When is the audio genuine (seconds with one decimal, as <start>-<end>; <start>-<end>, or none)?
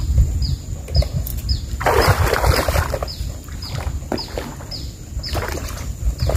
none